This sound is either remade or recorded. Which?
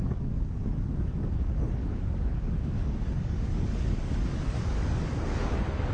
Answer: remade